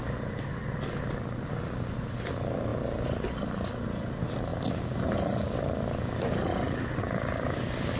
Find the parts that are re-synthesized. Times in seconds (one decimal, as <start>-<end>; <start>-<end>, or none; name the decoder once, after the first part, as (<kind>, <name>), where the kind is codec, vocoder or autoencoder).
none